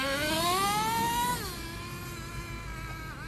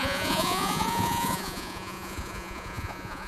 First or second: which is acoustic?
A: first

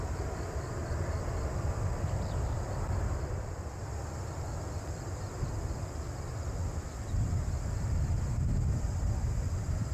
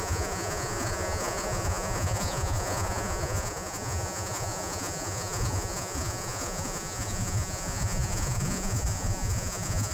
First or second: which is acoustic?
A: first